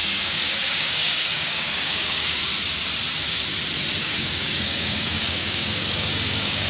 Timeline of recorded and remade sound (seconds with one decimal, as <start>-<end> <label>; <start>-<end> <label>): 0.0-2.4 remade; 2.4-4.0 recorded; 4.0-6.7 remade